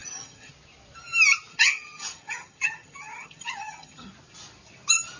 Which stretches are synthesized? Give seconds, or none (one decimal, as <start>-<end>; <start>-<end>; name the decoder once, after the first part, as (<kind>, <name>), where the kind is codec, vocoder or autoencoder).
0.0-0.5 (vocoder, HiFi-GAN); 1.5-4.1